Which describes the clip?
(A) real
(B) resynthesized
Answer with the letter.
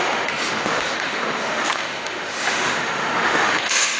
B